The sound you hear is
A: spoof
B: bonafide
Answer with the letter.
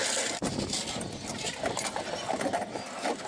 B